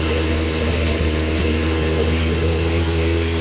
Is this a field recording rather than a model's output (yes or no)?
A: no